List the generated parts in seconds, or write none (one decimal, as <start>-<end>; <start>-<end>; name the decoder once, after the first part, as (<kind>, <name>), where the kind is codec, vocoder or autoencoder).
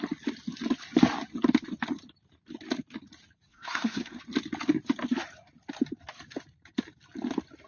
3.5-4.2 (codec, SNAC)